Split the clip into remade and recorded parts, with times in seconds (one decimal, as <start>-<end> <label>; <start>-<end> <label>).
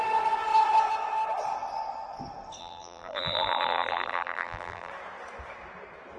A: 0.0-2.6 recorded; 2.6-4.9 remade; 4.9-6.2 recorded